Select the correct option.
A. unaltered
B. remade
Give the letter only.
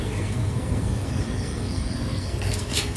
B